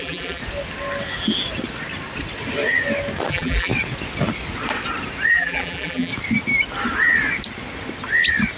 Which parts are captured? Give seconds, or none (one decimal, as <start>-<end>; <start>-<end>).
0.4-3.3; 3.7-5.3; 6.1-8.6